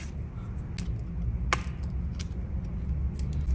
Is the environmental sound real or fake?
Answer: real